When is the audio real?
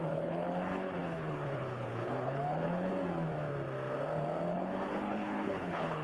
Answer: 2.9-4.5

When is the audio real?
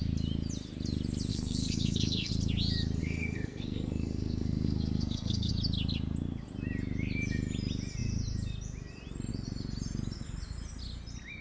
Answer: 0.0-1.3; 2.3-3.0; 5.5-11.4